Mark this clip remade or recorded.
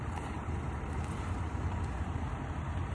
remade